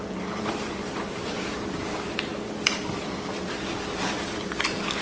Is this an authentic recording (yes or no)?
yes